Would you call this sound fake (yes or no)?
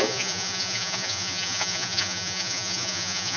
yes